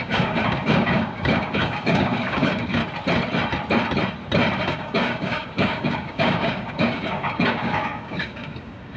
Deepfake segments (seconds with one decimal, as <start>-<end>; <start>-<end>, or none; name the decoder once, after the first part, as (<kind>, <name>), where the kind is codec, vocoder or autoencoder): 0.0-2.8 (codec, DAC); 4.6-9.0